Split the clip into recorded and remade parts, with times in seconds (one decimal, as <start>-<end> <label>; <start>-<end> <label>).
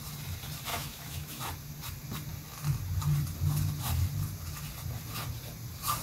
0.0-0.7 recorded; 0.7-1.4 remade; 1.4-6.0 recorded